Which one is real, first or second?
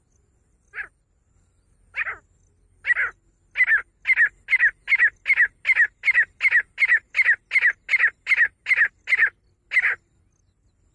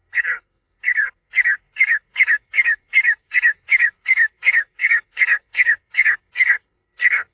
first